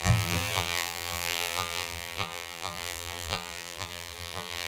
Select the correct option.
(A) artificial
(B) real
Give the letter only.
A